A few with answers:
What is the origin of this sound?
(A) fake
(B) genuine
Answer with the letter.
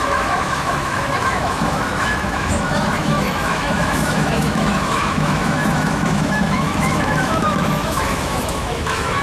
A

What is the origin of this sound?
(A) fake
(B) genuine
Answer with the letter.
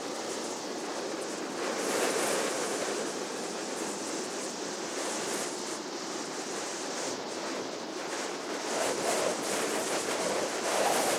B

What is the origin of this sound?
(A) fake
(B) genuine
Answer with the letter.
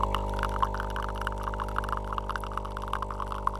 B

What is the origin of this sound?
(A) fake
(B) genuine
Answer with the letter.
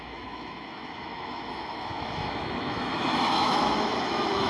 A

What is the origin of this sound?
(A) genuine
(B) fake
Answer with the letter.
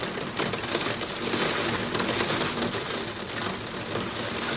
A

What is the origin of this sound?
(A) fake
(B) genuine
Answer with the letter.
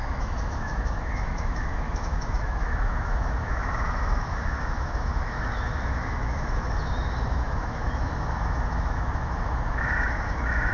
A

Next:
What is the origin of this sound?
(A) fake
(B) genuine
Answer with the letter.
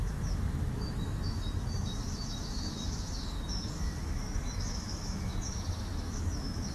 A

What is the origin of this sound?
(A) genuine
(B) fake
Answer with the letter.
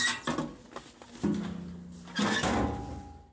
A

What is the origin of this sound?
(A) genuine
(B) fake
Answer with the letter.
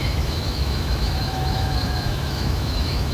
B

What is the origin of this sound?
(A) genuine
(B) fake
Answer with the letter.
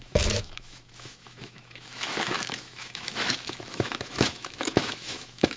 B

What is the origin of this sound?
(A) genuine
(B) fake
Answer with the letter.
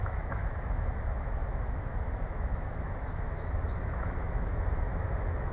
B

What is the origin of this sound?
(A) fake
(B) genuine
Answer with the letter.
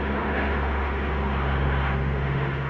A